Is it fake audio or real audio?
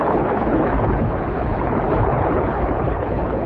fake